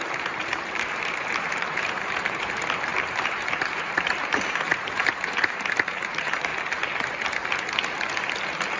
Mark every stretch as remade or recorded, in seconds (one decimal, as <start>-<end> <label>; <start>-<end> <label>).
0.0-6.5 remade; 6.5-8.8 recorded